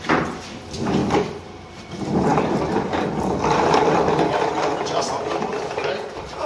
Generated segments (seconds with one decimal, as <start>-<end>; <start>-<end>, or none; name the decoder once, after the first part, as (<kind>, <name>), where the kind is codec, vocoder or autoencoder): 1.0-1.9 (vocoder, BigVGAN v2); 2.3-4.9